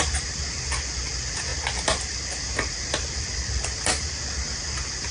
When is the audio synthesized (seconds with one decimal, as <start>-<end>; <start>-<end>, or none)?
none